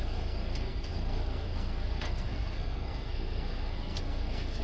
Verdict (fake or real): fake